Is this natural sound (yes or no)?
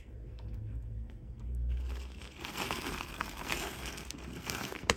no